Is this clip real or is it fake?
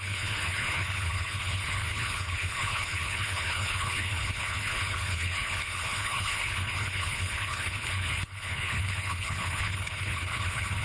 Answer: fake